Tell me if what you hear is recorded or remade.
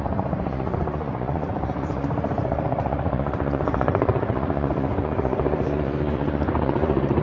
remade